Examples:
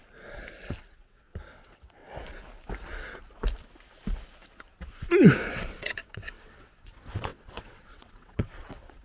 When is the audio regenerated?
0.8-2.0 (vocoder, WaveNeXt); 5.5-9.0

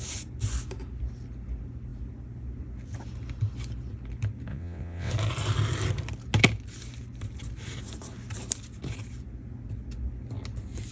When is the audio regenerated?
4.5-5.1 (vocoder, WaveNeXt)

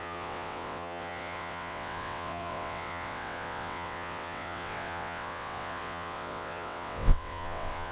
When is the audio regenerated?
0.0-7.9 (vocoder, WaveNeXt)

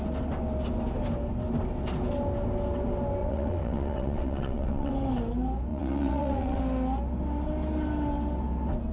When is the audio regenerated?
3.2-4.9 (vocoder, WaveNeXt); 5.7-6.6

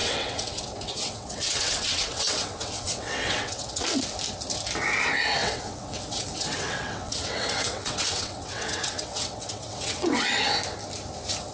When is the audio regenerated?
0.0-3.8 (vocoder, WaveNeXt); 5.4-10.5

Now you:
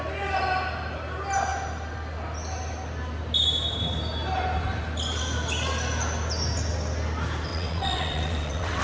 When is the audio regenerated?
7.5-8.8 (vocoder, WaveNeXt)